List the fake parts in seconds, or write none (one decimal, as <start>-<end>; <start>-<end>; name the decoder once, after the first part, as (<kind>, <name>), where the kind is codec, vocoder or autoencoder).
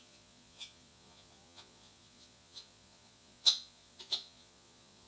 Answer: 0.0-5.1 (vocoder, Vocos)